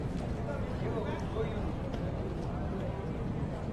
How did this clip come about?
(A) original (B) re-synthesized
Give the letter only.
A